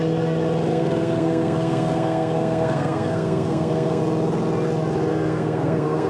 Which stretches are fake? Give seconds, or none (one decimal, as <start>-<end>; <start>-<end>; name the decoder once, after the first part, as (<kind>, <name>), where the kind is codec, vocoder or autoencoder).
0.7-4.0 (codec, SNAC); 5.1-6.1